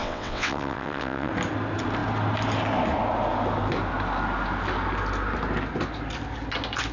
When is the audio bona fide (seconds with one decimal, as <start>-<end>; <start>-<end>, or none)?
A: 1.3-6.9